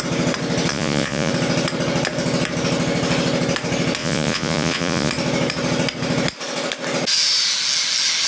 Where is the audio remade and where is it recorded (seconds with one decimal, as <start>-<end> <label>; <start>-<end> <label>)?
0.0-0.7 recorded; 0.7-1.3 remade; 1.3-4.0 recorded; 4.0-5.1 remade; 5.1-8.3 recorded